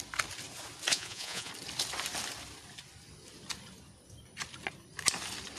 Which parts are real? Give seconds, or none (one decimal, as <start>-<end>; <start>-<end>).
0.0-0.9; 1.5-5.6